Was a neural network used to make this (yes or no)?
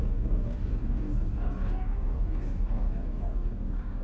yes